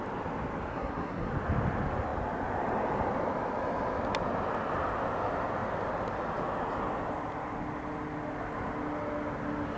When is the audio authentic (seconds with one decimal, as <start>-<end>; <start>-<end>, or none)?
0.0-0.7; 1.3-9.8